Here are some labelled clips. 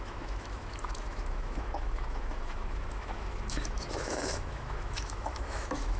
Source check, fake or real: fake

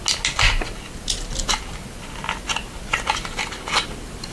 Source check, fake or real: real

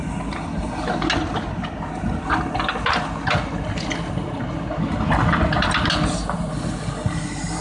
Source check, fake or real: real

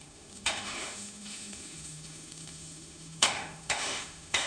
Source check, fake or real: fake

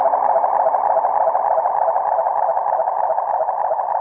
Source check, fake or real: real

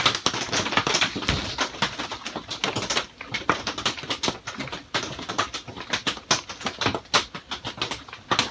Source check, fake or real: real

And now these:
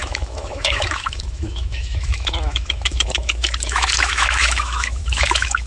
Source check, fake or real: fake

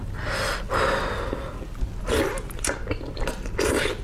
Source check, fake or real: real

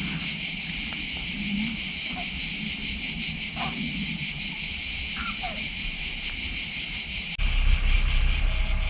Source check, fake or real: real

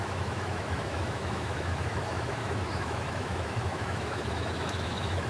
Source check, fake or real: fake